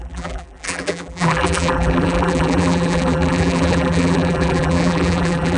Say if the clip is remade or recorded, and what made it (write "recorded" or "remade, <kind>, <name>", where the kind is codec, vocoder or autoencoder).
remade, vocoder, BigVGAN v2